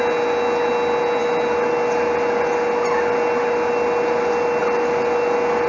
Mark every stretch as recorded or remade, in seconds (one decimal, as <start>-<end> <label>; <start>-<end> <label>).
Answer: 0.0-5.7 recorded